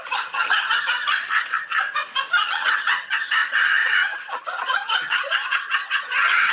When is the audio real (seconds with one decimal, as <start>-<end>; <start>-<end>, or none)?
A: 1.0-2.4